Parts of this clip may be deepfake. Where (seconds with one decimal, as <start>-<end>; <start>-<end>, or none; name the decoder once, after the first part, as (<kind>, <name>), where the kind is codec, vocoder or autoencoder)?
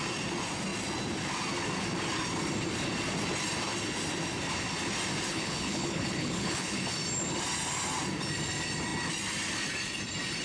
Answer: 5.3-6.8 (codec, HILCodec)